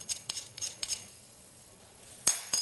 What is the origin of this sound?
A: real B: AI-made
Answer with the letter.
B